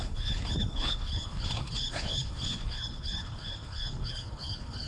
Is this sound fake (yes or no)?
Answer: yes